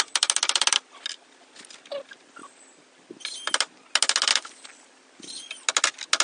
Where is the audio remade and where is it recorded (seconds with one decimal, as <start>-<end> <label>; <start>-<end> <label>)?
0.0-6.2 recorded